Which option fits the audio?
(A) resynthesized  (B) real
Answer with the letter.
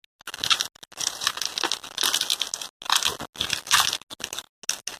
B